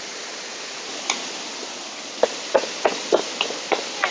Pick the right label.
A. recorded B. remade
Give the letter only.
A